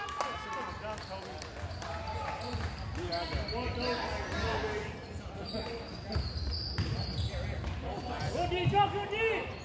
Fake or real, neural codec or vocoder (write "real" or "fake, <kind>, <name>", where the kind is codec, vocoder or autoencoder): real